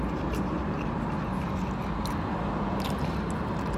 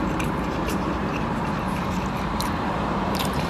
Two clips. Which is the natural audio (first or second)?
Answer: first